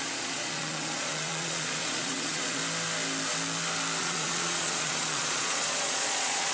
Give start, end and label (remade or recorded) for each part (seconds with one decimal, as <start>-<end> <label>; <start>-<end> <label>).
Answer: 0.0-2.6 remade; 2.6-4.0 recorded; 4.0-6.5 remade